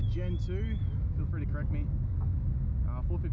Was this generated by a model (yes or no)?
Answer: no